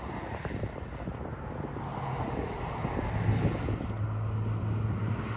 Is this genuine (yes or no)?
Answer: yes